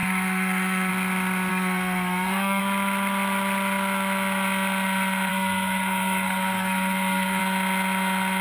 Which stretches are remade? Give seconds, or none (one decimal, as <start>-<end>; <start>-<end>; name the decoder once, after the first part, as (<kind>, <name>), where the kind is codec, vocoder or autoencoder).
0.0-0.9 (codec, SNAC); 1.5-2.6; 5.3-7.4

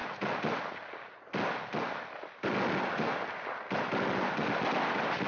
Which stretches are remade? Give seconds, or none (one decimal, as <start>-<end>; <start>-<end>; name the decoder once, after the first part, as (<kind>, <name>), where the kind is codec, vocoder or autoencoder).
none